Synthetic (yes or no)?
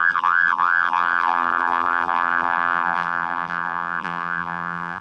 yes